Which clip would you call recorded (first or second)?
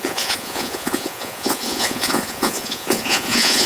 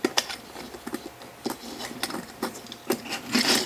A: second